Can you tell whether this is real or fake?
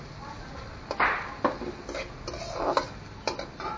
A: real